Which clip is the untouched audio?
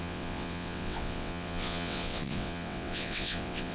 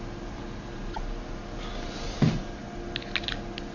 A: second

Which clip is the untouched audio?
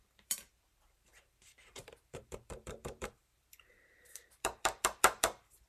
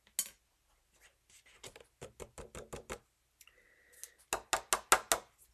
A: second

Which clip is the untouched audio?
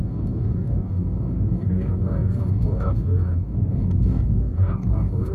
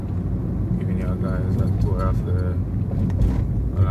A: second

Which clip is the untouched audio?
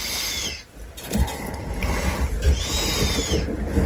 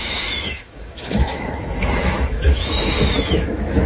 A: first